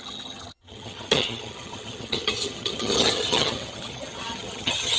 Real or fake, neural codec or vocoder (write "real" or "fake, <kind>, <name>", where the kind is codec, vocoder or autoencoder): fake, vocoder, HiFi-GAN